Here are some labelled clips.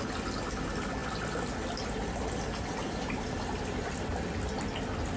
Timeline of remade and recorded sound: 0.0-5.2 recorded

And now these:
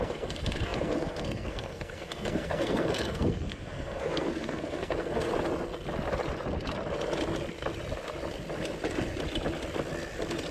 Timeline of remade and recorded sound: 0.0-5.3 remade; 5.3-10.5 recorded

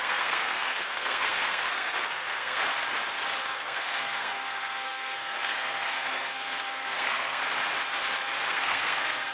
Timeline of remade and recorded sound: 0.0-2.6 remade; 2.6-3.5 recorded; 3.5-7.4 remade; 7.4-8.5 recorded; 8.5-9.3 remade

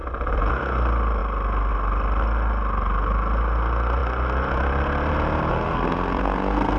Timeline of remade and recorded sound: 0.0-5.5 recorded; 5.5-6.8 remade

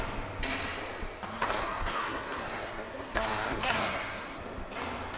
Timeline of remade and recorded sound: 0.0-1.3 recorded; 1.3-4.4 remade; 4.4-5.2 recorded